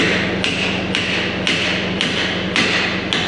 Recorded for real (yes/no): yes